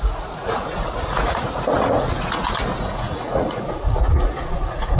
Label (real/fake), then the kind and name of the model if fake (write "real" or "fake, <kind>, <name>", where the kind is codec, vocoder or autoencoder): fake, vocoder, Vocos